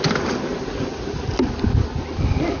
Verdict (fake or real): real